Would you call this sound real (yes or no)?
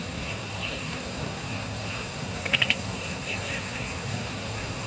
no